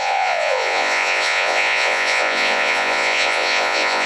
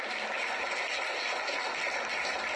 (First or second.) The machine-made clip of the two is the first